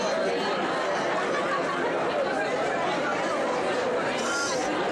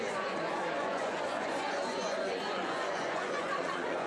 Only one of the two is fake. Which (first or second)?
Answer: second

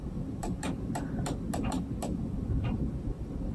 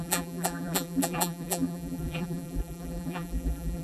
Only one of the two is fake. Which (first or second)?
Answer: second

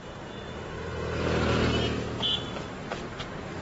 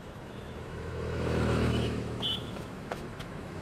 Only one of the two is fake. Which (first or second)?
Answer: second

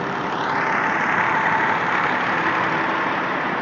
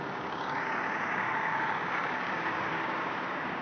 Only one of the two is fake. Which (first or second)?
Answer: second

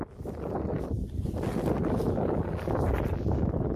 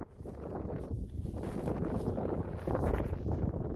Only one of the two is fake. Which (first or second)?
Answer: second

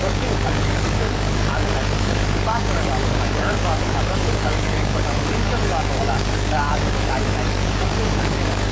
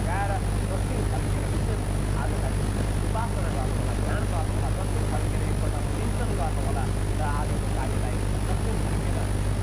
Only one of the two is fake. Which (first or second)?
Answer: first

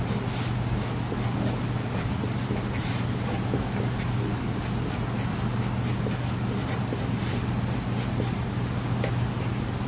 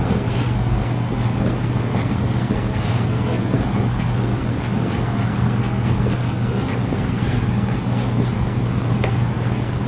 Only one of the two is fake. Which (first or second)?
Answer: second